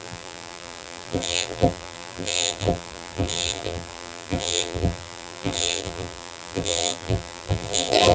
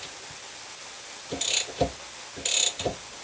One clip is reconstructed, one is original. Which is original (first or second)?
second